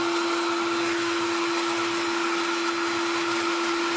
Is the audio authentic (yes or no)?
yes